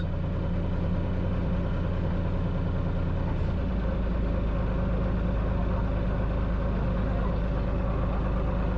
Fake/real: real